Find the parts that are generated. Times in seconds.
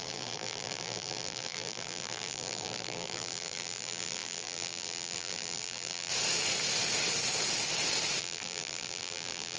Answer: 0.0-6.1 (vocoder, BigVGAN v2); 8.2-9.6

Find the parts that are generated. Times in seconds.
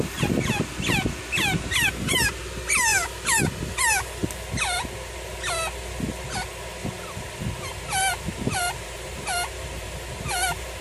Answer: 7.7-10.8 (vocoder, BigVGAN v2)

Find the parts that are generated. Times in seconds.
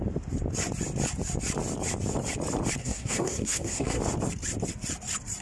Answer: 2.8-4.0 (codec, SNAC)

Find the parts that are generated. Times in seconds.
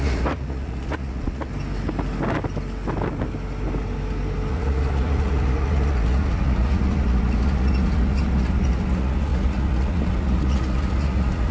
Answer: 0.0-1.5 (vocoder, Vocos); 4.5-11.5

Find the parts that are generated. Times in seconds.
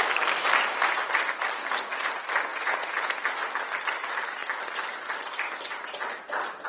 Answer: 2.5-3.2 (vocoder, Vocos)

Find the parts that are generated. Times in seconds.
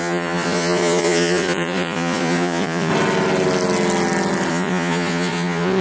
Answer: 0.0-2.9 (vocoder, Vocos); 4.5-5.8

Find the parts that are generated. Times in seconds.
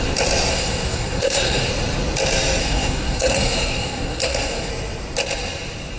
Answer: 0.5-1.7 (codec, SNAC); 2.6-4.7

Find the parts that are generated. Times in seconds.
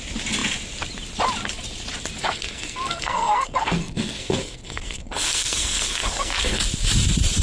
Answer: 2.2-6.6 (codec, SNAC)